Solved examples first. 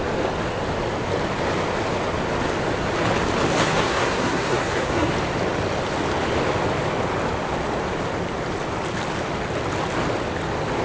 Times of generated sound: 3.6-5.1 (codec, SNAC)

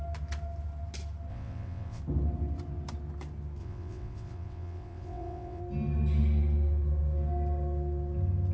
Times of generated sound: 1.3-2.0 (vocoder, WaveNeXt); 3.6-5.6

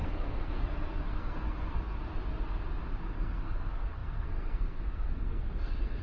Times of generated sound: 0.0-2.0 (codec, SNAC); 3.1-6.0

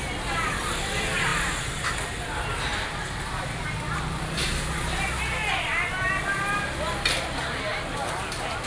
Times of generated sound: none

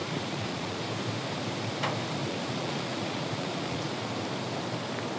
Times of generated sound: 0.0-0.8 (vocoder, Vocos); 2.2-4.1